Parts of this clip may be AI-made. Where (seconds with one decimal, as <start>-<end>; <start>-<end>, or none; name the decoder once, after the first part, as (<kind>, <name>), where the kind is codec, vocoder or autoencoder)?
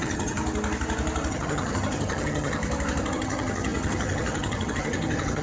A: 0.0-0.4 (vocoder, HiFi-GAN); 1.3-2.6; 3.1-5.4